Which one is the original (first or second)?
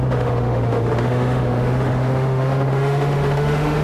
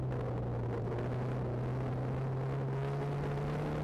second